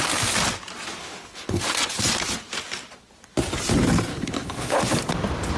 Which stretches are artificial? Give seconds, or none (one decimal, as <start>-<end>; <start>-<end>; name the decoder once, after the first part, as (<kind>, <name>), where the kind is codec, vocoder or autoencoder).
1.0-1.6 (codec, HILCodec); 4.1-4.8